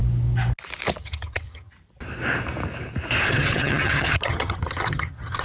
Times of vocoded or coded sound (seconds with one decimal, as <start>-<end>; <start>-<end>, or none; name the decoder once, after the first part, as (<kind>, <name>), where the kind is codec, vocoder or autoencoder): 1.0-1.7 (vocoder, HiFi-GAN); 3.3-5.4

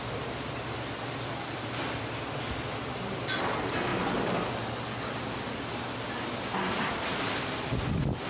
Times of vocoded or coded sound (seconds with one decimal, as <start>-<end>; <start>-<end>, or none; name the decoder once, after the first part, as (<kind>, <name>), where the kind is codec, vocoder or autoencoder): none

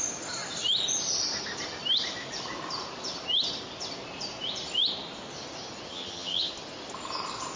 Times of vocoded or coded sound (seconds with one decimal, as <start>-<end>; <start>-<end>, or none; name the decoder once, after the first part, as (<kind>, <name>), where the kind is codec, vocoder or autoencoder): 5.9-6.5 (vocoder, HiFi-GAN)

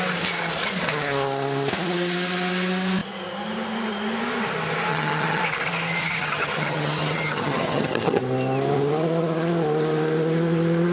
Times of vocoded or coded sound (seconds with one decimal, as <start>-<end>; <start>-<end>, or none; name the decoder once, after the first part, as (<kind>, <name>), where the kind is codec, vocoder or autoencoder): 4.9-5.4 (vocoder, HiFi-GAN); 6.0-8.2

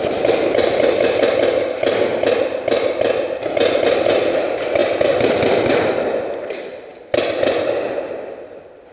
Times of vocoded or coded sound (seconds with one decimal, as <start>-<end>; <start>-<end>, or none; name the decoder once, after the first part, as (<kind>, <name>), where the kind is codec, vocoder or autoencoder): none

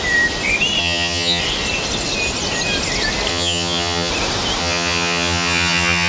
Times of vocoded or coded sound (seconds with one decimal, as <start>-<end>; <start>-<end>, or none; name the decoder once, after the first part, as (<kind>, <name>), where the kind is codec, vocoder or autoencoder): 0.8-1.4 (vocoder, HiFi-GAN); 3.3-4.1; 4.6-6.1

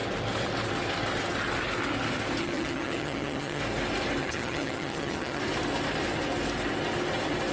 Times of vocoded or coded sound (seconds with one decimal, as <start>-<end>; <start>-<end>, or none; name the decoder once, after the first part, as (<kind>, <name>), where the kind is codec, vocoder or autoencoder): 2.4-3.6 (vocoder, HiFi-GAN); 4.2-5.4